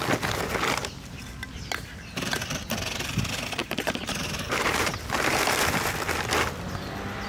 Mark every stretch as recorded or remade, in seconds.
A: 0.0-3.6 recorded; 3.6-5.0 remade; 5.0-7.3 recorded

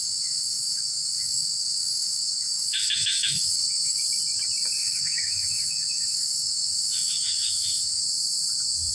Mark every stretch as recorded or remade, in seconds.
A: 0.0-4.0 remade; 4.0-4.8 recorded; 4.8-8.0 remade; 8.0-8.9 recorded

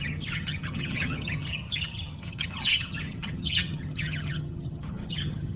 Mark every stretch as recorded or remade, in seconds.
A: 0.0-5.6 remade